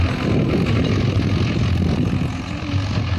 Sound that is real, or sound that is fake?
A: real